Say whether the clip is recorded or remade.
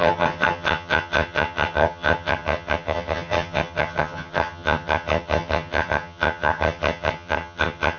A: remade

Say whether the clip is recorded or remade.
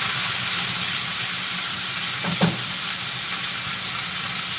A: recorded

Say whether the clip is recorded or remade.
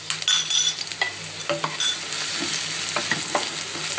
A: recorded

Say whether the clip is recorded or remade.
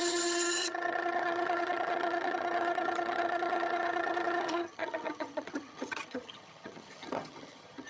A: remade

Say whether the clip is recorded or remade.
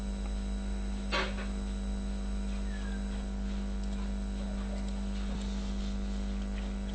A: recorded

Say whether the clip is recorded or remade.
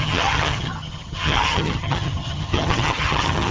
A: remade